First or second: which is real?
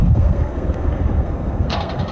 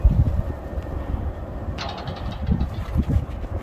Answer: second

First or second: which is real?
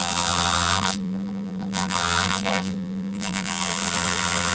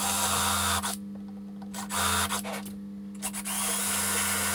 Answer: second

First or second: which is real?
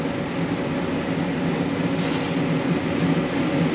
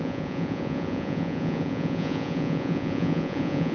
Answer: first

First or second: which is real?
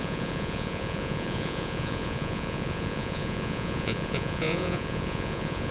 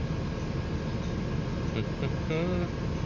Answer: second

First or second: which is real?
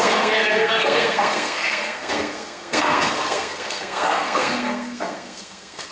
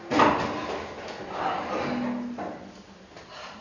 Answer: second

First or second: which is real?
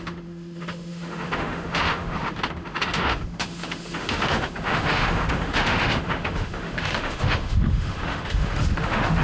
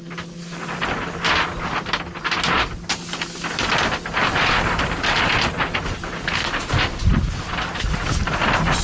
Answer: second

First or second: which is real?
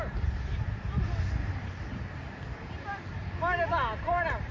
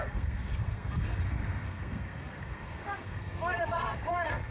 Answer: first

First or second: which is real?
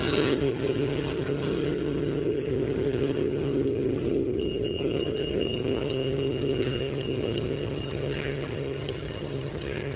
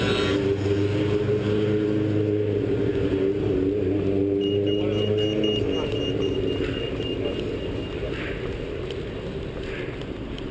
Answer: second